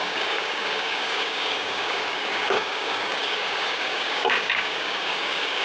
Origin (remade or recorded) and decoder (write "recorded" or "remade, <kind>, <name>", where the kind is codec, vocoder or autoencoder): remade, codec, DAC